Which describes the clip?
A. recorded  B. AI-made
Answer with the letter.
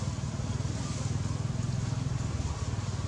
A